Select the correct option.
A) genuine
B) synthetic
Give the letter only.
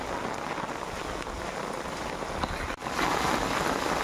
A